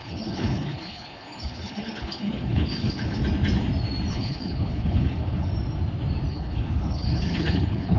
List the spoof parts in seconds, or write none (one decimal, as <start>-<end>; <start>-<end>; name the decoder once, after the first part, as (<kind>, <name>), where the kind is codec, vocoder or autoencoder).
0.0-3.2 (codec, HILCodec); 4.1-5.5; 6.3-8.0